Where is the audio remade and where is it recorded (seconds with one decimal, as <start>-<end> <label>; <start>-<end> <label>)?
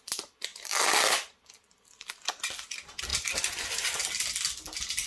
0.0-5.1 recorded